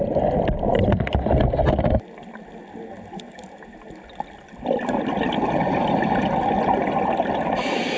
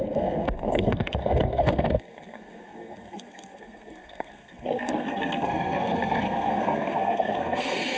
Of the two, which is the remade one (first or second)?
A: second